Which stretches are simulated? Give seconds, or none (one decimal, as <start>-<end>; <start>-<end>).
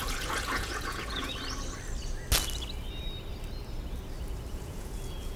0.0-1.3; 4.5-5.4